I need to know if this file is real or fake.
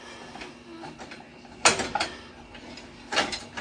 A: real